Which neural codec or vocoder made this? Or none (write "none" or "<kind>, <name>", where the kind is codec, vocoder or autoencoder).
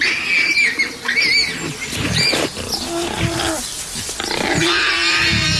none